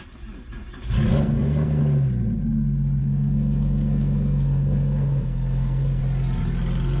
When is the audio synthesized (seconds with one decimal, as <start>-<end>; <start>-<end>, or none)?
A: 1.1-1.8; 3.0-6.0